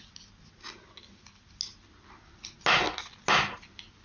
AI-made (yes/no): no